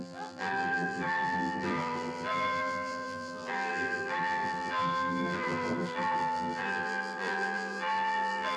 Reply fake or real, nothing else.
fake